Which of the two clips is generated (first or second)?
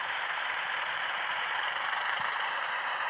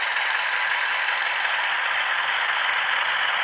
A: first